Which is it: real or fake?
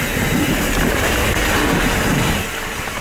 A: real